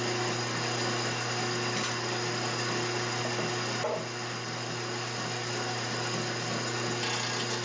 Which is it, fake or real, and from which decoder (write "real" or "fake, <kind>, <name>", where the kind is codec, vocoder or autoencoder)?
real